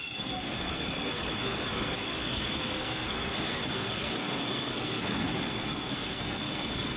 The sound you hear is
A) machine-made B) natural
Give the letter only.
A